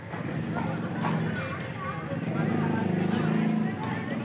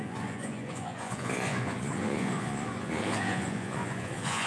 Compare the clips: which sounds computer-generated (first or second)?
second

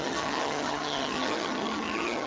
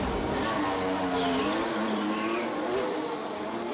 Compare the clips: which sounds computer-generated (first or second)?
first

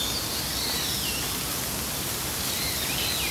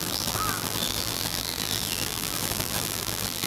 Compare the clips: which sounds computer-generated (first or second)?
second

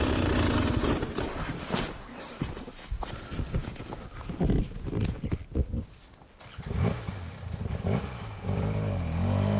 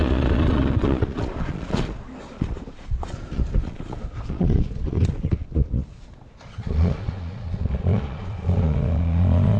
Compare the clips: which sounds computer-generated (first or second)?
second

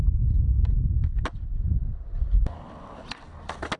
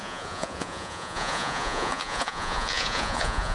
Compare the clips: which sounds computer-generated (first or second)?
second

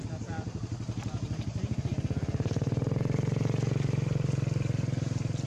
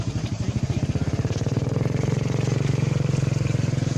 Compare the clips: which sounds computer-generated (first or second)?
second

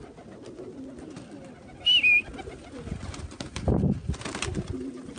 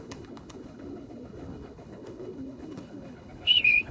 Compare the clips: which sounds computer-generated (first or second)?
second